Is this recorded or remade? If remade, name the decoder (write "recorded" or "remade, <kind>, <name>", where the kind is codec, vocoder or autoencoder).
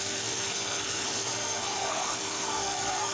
remade, codec, SNAC